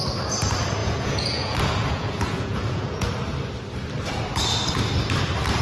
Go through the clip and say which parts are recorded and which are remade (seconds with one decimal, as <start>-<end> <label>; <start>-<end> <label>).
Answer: 0.0-0.8 recorded; 0.8-3.1 remade; 3.1-5.6 recorded

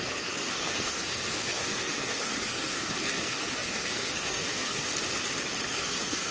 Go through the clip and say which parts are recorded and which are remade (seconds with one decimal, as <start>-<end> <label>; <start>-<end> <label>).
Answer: 0.0-4.9 remade; 4.9-5.7 recorded; 5.7-6.3 remade

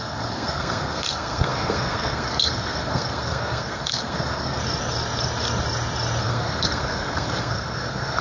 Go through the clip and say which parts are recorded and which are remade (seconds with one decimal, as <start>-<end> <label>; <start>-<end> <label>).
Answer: 0.0-4.6 remade; 4.6-6.2 recorded; 6.2-8.2 remade

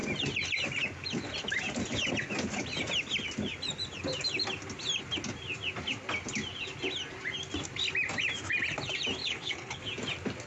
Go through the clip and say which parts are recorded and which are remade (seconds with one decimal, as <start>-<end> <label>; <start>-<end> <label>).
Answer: 0.0-9.2 recorded; 9.2-9.8 remade; 9.8-10.5 recorded

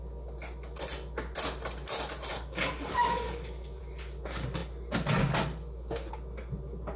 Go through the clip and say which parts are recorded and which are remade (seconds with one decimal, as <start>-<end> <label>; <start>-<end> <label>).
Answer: 0.0-2.3 recorded; 2.3-3.8 remade; 3.8-7.0 recorded

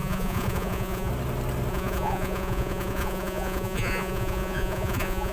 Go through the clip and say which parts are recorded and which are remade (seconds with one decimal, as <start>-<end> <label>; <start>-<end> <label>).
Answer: 0.0-1.1 remade; 1.1-1.7 recorded; 1.7-5.3 remade